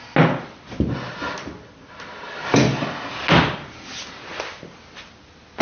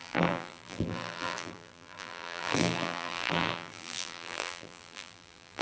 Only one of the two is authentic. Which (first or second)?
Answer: first